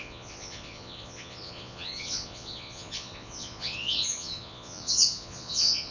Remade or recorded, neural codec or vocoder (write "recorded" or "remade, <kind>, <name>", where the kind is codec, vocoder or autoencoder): remade, vocoder, Vocos